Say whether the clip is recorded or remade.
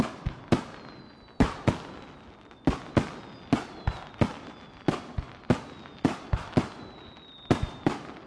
recorded